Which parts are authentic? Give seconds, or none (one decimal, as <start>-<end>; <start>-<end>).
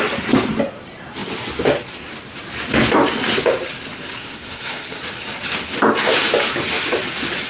0.0-4.2; 5.0-7.5